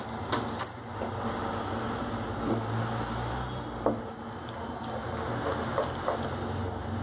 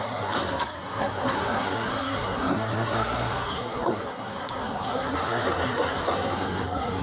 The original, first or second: first